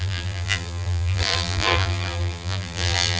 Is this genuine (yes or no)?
no